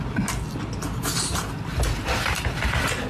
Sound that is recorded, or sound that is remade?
recorded